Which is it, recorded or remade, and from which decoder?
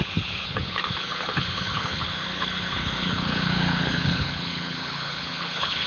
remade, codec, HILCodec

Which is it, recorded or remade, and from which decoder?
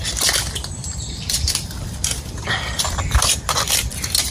remade, vocoder, BigVGAN v2